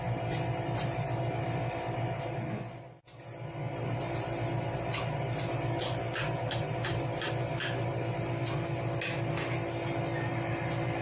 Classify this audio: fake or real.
real